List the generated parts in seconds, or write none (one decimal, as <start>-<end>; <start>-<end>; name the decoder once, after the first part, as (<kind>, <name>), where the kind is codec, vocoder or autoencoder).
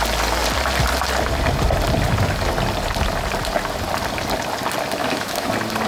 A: 5.0-5.5 (autoencoder, DAC-VAE)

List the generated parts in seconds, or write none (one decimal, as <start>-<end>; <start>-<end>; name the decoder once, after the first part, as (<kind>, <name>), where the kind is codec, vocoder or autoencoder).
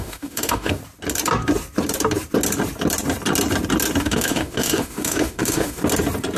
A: 0.0-0.8 (autoencoder, DAC-VAE); 4.0-5.8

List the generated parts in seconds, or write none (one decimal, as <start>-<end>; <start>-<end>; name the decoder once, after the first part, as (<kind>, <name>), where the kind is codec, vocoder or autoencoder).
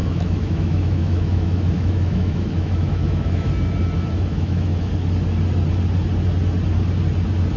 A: 0.0-3.5 (autoencoder, DAC-VAE); 4.1-4.9